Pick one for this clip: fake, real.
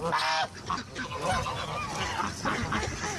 real